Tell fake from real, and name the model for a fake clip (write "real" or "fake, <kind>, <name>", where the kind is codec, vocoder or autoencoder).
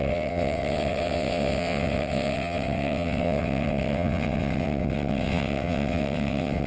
fake, vocoder, WaveNeXt